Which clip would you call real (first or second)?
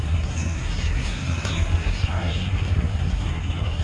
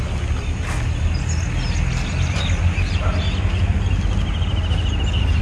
second